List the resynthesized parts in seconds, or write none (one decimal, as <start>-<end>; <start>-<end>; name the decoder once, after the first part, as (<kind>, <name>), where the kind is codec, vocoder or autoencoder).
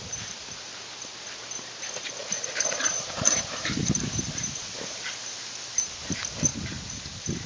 2.2-5.1 (vocoder, BigVGAN v2); 6.5-7.5